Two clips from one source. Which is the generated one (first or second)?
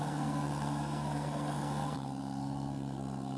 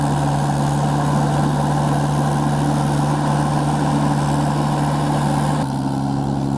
first